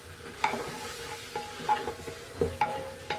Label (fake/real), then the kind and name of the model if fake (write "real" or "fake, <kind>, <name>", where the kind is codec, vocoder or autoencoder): real